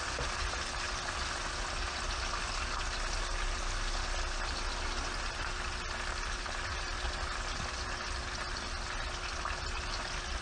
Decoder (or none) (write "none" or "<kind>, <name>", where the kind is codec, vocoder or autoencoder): none